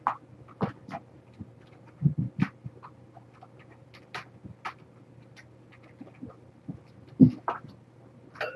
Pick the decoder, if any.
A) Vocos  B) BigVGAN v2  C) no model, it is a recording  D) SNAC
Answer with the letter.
C